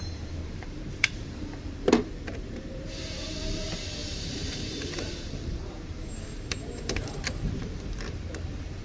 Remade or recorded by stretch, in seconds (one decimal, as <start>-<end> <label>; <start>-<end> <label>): 0.0-8.8 remade